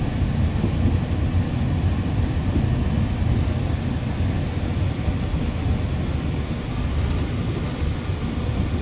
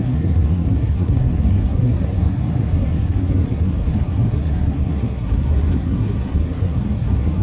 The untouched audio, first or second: first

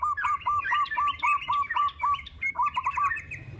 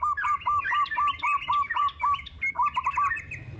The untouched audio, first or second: second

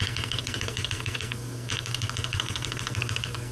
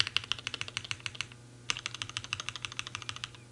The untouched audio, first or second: second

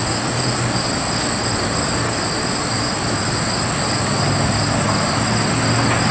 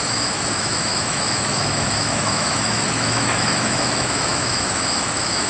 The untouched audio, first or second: first